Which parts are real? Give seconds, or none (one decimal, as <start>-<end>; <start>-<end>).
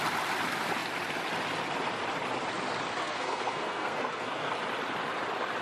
0.0-3.0; 4.5-5.6